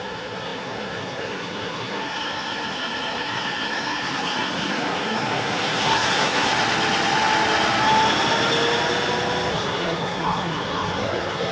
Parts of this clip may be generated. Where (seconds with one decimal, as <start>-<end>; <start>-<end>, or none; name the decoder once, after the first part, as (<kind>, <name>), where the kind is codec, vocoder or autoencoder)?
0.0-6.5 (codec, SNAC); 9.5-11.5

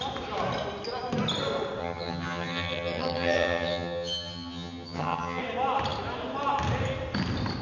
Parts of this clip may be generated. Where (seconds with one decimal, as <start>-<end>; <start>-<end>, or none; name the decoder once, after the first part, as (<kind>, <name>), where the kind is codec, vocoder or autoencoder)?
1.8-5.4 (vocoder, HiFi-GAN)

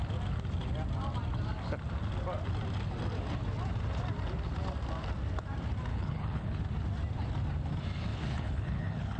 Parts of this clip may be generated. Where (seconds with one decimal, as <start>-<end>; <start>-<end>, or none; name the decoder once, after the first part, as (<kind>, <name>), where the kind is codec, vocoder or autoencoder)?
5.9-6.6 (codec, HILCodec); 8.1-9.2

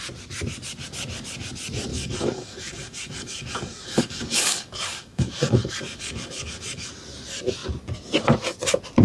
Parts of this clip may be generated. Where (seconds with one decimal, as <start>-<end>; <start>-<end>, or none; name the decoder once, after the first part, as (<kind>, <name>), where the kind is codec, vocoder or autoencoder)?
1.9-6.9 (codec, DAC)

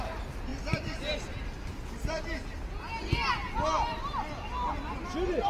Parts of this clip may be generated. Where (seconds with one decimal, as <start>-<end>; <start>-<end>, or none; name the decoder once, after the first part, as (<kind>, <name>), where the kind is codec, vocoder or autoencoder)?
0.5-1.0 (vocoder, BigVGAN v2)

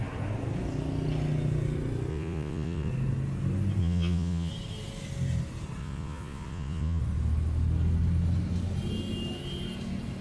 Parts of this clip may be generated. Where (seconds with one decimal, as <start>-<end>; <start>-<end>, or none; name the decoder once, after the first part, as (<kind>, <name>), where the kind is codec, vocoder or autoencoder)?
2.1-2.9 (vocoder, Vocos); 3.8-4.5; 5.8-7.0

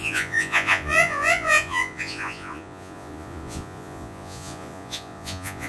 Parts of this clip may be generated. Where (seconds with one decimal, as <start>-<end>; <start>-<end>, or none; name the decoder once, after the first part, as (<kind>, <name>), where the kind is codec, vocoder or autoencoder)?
0.0-5.7 (vocoder, Vocos)

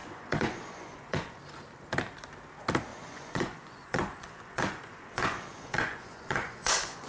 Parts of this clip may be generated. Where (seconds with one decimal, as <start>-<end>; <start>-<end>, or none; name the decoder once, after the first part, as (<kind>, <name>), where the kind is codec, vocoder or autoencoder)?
0.0-1.4 (vocoder, Vocos); 2.9-7.1